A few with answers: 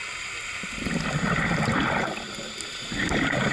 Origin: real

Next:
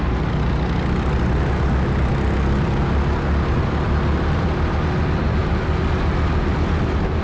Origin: real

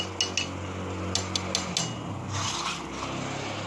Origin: real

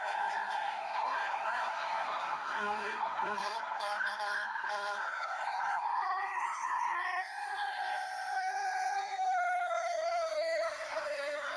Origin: fake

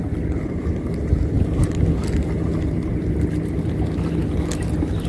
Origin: real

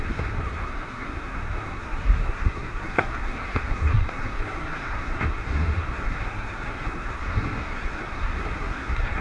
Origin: fake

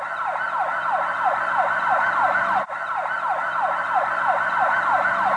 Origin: real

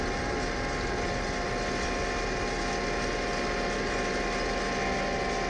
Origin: real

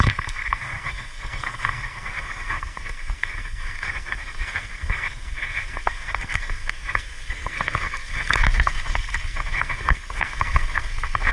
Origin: fake